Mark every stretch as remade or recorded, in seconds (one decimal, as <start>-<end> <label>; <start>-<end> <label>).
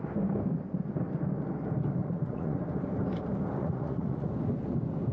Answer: 0.0-2.0 recorded; 2.0-2.6 remade; 2.6-3.6 recorded; 3.6-4.3 remade; 4.3-5.1 recorded